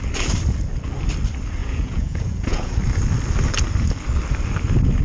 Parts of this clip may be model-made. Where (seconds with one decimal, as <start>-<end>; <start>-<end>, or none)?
1.6-2.8